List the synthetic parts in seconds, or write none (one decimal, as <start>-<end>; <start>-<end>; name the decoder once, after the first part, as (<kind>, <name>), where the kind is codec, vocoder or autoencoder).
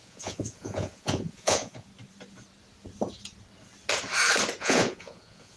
0.0-1.9 (vocoder, Vocos); 4.6-5.6